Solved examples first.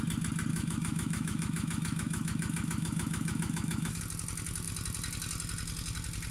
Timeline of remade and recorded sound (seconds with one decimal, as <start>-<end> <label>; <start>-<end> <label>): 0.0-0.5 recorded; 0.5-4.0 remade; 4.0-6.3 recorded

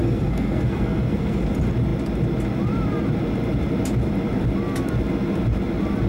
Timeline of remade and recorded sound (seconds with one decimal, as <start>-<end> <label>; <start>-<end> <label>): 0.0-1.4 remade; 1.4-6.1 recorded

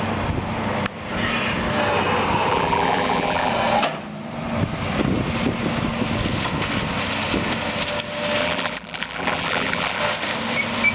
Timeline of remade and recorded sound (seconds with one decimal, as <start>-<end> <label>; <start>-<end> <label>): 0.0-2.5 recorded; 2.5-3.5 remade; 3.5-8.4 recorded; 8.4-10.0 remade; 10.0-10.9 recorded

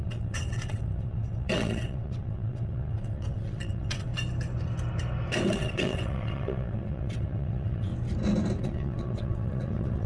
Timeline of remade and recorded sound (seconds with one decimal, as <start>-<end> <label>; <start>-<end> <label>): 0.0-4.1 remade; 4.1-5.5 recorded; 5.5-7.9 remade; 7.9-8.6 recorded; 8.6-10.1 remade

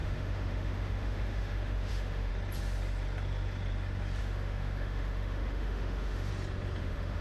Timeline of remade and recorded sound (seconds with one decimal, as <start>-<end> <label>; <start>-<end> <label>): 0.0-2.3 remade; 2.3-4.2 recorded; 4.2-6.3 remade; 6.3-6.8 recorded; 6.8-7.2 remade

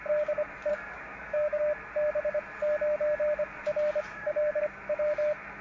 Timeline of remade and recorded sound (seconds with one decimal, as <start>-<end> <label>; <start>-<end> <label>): 0.0-0.7 recorded; 0.7-1.6 remade; 1.6-4.1 recorded; 4.1-4.6 remade; 4.6-5.6 recorded

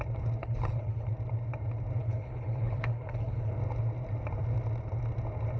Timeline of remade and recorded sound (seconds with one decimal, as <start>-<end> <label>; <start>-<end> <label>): 0.0-0.4 recorded; 0.4-1.1 remade; 1.1-2.0 recorded; 2.0-3.5 remade; 3.5-5.6 recorded

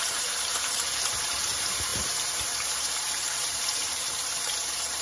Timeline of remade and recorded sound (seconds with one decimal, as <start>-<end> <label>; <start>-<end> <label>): 0.0-5.0 remade